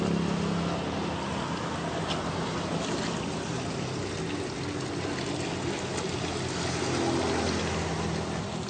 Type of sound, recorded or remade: recorded